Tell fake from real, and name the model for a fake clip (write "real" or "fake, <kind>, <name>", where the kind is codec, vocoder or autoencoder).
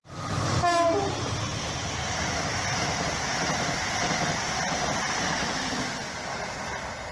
real